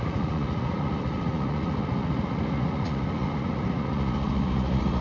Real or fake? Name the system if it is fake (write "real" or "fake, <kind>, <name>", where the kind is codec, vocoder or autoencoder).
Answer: fake, vocoder, Vocos